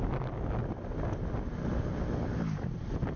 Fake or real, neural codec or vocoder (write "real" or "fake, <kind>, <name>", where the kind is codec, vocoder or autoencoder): real